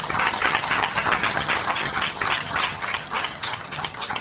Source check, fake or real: fake